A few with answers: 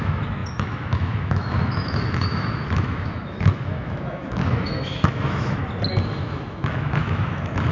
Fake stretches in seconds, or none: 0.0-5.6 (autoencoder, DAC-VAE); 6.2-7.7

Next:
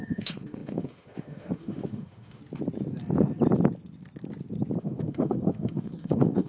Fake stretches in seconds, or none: 0.0-2.4 (autoencoder, DAC-VAE); 4.8-6.5

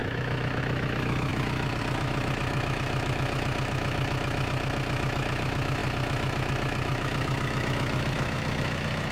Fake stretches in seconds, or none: 0.0-9.1 (autoencoder, DAC-VAE)

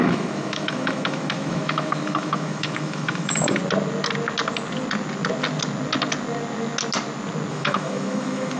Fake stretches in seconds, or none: 0.0-3.6 (autoencoder, DAC-VAE); 7.5-8.6

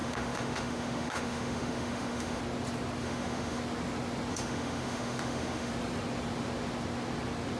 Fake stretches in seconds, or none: 0.0-2.4 (autoencoder, DAC-VAE); 3.0-3.6; 4.3-5.7

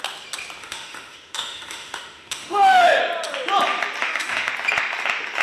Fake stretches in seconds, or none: 0.6-3.0 (autoencoder, DAC-VAE); 4.0-4.5